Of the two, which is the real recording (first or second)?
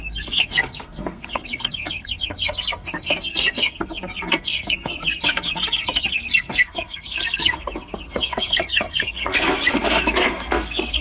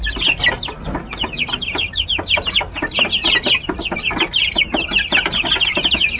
second